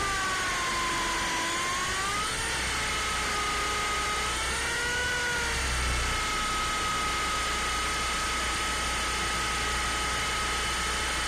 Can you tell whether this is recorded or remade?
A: recorded